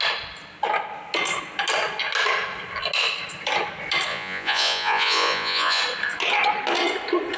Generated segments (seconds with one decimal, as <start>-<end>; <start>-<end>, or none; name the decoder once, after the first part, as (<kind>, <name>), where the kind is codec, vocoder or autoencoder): 4.1-5.8 (vocoder, Vocos)